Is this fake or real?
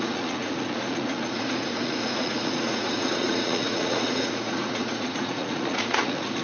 fake